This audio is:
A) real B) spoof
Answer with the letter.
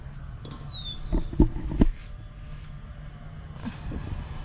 A